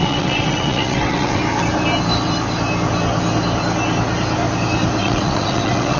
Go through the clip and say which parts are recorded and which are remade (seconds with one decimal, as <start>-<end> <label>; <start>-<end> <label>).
0.0-1.4 remade; 1.4-5.0 recorded; 5.0-6.0 remade